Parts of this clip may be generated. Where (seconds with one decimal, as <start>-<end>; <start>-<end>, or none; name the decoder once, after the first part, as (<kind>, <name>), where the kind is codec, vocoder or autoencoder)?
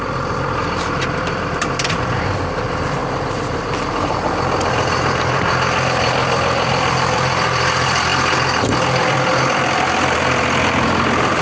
0.0-3.0 (vocoder, BigVGAN v2); 4.7-8.1; 9.0-11.4